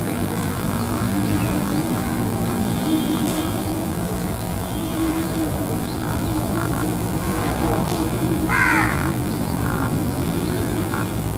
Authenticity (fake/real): fake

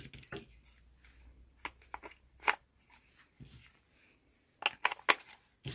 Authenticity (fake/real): real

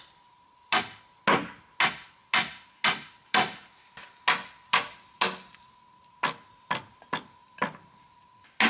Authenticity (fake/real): real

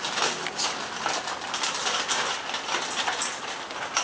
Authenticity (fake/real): real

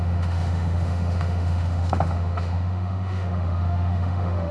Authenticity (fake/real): fake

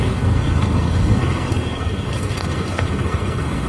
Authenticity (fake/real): fake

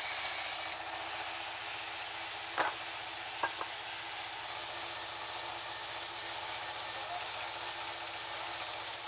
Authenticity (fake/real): real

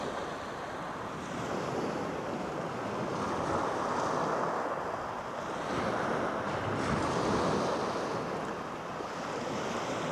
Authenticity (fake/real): real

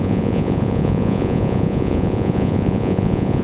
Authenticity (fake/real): fake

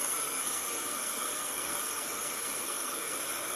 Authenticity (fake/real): fake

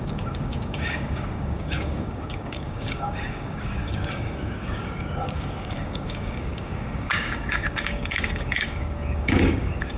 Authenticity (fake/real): fake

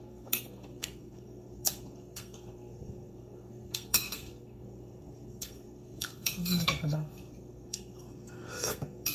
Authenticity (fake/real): fake